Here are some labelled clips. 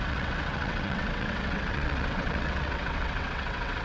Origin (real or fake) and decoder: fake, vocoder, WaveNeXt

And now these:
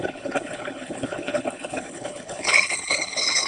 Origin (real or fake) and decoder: fake, codec, HILCodec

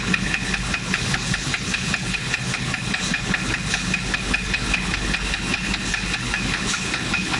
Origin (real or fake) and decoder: fake, codec, HILCodec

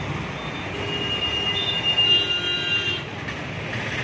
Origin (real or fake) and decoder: real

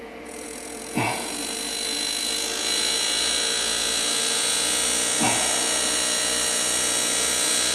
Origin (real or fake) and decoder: fake, vocoder, Vocos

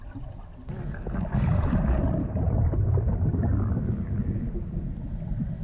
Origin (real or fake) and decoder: real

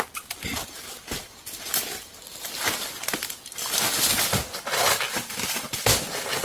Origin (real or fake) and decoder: real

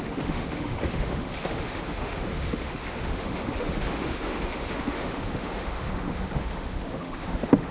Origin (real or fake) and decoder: fake, autoencoder, DAC-VAE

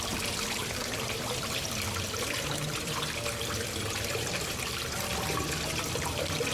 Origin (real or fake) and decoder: fake, vocoder, BigVGAN v2